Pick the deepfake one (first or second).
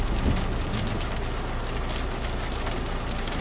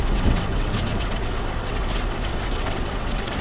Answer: second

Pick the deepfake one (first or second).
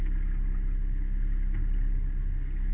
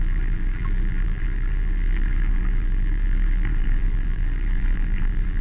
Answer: second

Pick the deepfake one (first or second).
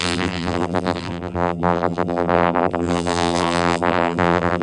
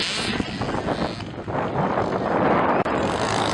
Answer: first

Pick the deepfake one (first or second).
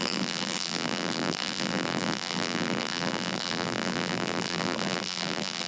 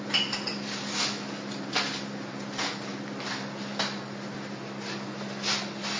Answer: first